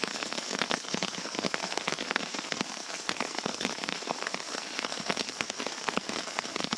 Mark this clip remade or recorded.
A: remade